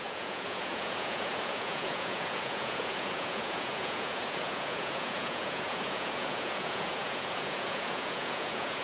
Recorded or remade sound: remade